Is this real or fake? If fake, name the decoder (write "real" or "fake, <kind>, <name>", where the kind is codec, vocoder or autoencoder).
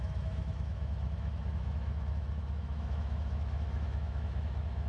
fake, autoencoder, DAC-VAE